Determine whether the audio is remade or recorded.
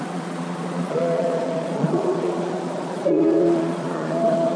remade